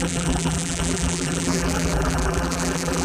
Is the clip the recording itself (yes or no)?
no